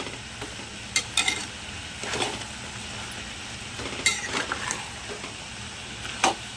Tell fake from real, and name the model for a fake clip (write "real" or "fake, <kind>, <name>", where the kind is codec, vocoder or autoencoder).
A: real